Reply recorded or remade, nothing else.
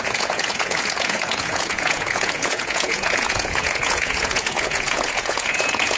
remade